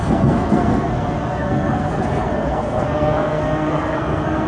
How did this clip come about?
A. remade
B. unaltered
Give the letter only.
A